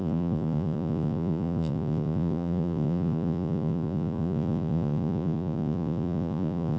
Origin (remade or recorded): remade